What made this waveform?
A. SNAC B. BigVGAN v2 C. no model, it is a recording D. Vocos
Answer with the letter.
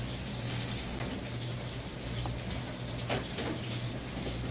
C